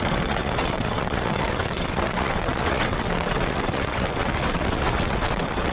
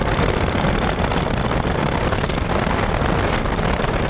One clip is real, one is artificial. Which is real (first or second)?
second